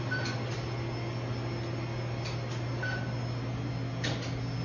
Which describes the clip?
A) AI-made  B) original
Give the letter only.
B